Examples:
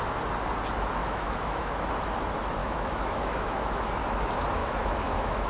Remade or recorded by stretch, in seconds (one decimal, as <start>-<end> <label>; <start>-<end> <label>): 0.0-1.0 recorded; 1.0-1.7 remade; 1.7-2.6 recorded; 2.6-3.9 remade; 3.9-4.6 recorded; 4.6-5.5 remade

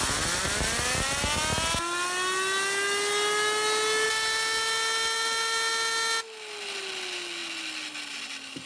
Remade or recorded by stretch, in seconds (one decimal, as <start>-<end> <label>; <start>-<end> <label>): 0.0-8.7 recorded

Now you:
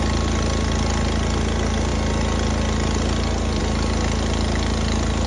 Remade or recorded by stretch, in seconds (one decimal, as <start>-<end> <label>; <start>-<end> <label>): 0.0-5.3 recorded